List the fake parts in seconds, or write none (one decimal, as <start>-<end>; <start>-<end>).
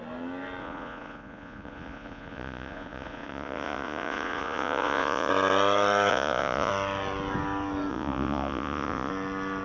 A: 0.6-5.3; 6.1-6.7; 7.9-9.1